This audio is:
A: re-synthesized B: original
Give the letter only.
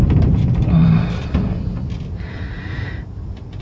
B